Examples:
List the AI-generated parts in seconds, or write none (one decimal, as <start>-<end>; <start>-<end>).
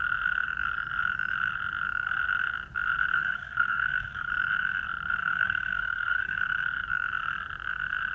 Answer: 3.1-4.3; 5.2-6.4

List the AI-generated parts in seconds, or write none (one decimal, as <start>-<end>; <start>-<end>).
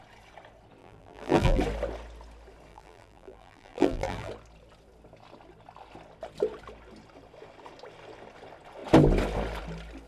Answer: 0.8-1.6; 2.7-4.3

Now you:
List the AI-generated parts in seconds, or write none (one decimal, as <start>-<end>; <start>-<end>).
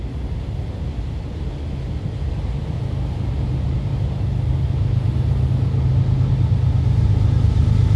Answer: none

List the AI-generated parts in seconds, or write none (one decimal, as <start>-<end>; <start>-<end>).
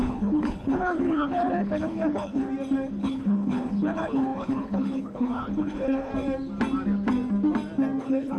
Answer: 0.0-2.5; 3.0-6.1; 8.0-8.4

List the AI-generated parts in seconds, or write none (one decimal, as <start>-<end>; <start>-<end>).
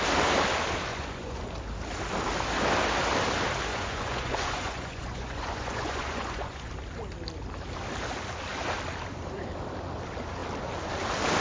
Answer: 0.9-1.4; 3.7-6.7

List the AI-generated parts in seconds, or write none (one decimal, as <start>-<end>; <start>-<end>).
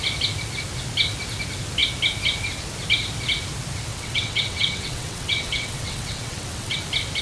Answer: 3.9-6.8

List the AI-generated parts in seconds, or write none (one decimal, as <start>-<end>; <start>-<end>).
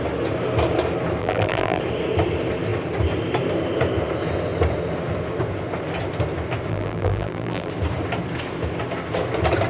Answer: 1.2-1.8; 6.7-7.7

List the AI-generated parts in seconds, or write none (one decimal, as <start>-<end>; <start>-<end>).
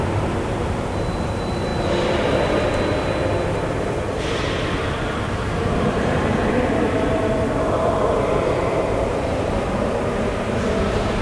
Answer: 0.0-1.7; 4.2-11.2